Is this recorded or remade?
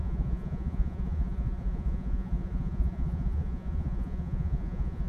remade